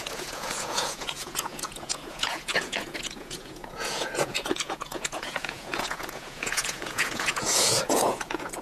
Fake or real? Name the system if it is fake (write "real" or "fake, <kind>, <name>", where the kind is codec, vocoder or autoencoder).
fake, vocoder, Vocos